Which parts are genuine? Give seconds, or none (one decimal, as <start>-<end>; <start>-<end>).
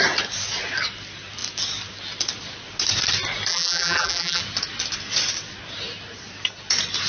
0.0-3.5; 4.4-7.1